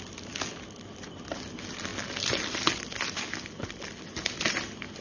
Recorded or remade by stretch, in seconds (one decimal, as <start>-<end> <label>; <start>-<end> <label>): 0.0-5.0 recorded